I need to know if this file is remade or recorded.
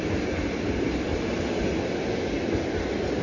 recorded